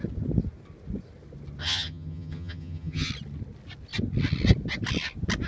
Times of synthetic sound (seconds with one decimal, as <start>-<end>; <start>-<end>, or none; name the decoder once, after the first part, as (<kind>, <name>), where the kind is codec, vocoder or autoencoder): 1.6-3.1 (vocoder, HiFi-GAN)